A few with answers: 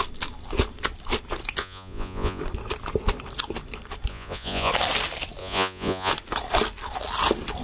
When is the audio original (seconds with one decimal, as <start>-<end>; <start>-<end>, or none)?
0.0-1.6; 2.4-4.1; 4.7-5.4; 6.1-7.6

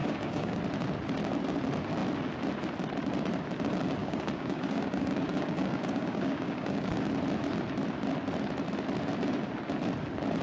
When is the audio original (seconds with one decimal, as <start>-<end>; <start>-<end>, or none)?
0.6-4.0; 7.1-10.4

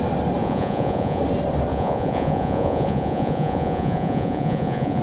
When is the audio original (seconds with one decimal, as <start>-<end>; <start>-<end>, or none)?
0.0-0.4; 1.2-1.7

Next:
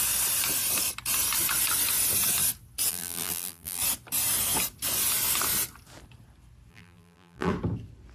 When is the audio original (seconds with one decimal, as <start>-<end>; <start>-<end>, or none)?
0.0-2.9; 3.8-6.7; 7.5-8.1